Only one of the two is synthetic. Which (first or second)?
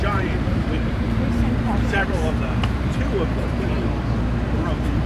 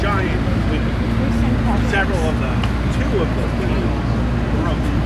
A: first